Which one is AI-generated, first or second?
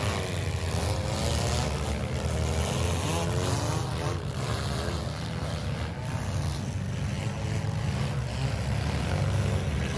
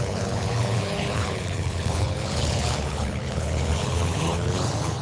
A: second